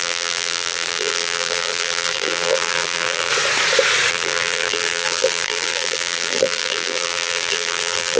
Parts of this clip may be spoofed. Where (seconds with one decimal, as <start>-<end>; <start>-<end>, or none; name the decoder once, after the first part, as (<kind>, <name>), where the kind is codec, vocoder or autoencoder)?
0.0-3.3 (vocoder, BigVGAN v2); 4.1-8.2